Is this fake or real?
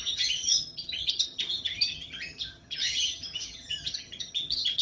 fake